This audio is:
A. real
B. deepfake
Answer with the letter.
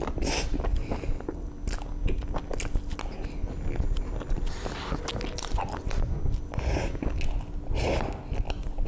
A